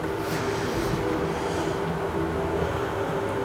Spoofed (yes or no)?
no